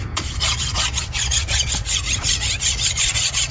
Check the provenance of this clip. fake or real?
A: fake